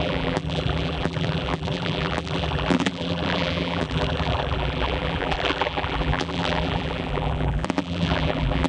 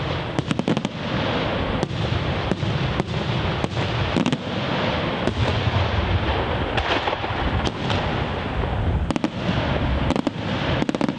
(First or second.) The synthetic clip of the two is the first